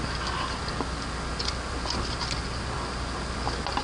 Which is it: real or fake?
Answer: real